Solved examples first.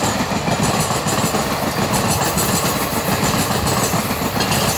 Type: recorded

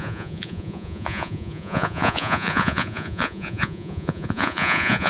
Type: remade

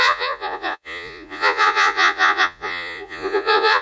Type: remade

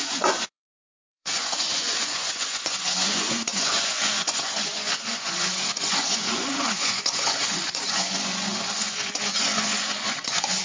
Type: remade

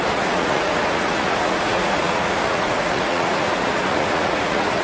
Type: remade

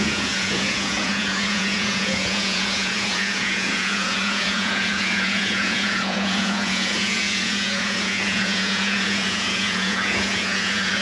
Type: remade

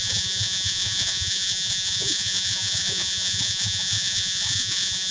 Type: remade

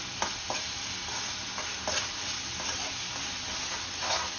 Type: recorded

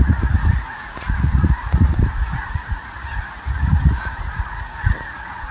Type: remade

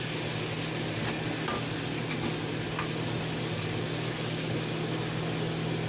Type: recorded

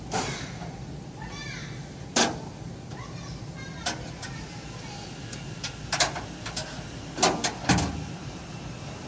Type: recorded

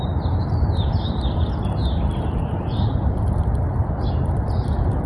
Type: recorded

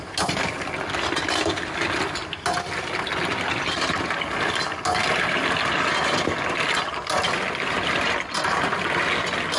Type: recorded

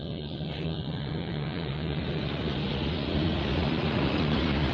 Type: remade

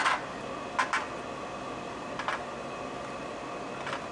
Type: recorded